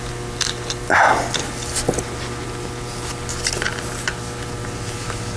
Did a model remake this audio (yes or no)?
no